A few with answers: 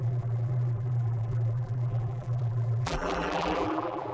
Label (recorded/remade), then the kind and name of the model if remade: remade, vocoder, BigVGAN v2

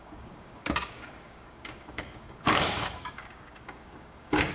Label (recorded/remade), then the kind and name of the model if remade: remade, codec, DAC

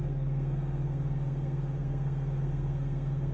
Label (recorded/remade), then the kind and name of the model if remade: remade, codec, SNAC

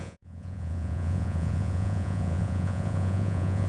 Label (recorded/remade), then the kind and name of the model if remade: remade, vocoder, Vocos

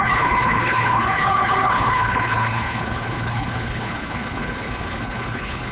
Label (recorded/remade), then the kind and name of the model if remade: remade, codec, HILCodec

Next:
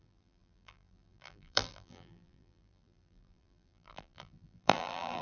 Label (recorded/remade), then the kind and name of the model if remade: remade, vocoder, BigVGAN v2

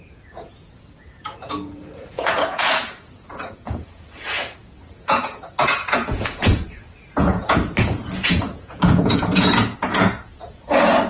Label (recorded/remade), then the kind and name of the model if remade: remade, vocoder, Vocos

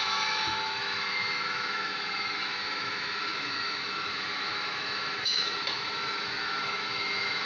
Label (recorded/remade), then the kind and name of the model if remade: remade, autoencoder, DAC-VAE